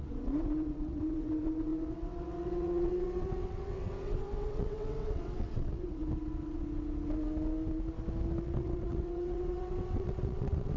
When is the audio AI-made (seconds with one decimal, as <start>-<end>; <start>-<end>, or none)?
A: 0.0-6.0; 8.4-10.8